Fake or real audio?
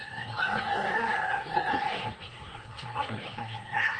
fake